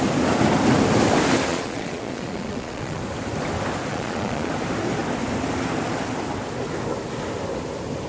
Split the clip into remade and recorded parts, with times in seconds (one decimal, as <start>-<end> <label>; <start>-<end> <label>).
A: 0.0-1.5 recorded; 1.5-3.0 remade; 3.0-3.9 recorded; 3.9-4.5 remade; 4.5-8.1 recorded